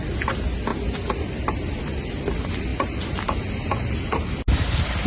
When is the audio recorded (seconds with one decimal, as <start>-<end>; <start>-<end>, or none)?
0.0-5.1